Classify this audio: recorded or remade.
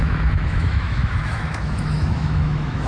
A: remade